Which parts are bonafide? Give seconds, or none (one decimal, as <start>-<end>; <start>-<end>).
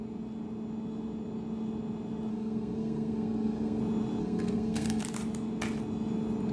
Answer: 0.0-2.3; 3.8-4.2; 5.0-6.5